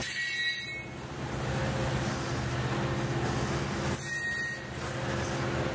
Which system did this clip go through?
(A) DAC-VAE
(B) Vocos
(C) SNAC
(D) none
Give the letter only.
D